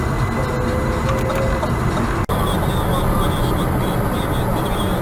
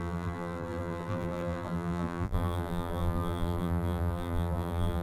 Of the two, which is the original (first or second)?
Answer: first